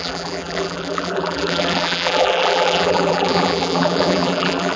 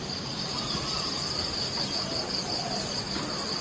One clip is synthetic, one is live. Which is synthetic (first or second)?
first